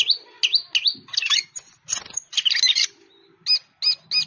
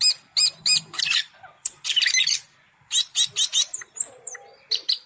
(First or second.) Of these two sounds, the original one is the first